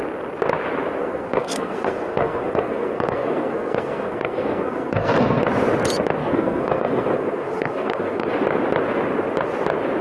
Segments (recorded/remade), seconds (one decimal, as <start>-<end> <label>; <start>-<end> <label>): 0.0-1.0 recorded; 1.0-5.4 remade; 5.4-6.2 recorded; 6.2-8.3 remade; 8.3-10.0 recorded